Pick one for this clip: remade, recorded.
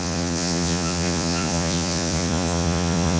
remade